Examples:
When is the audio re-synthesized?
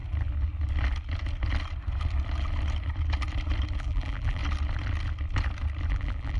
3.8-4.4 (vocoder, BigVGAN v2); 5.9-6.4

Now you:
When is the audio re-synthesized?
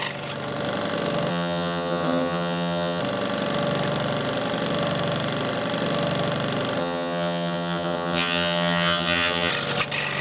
1.3-3.0 (vocoder, HiFi-GAN); 6.8-9.5